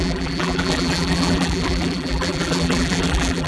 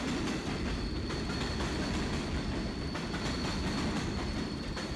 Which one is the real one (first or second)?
second